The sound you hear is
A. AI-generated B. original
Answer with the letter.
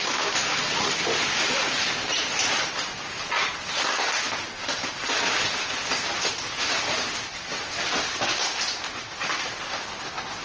B